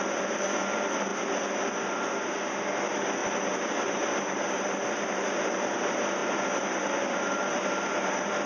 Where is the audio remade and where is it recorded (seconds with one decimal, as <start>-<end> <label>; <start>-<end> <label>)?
0.0-3.2 recorded; 3.2-5.6 remade; 5.6-6.2 recorded; 6.2-8.5 remade